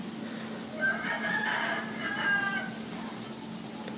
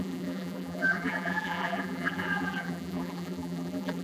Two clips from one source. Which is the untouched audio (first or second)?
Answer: first